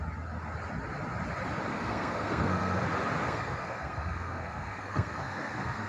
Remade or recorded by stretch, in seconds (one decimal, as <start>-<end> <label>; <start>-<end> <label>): 0.0-1.7 recorded; 1.7-2.8 remade; 2.8-3.2 recorded; 3.2-5.9 remade